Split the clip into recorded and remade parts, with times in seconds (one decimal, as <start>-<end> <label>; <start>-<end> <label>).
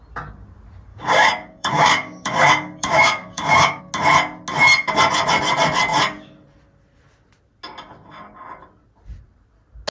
0.0-0.9 recorded; 0.9-3.8 remade; 3.8-9.9 recorded